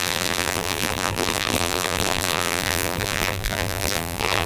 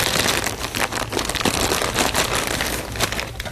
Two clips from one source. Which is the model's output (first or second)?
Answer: first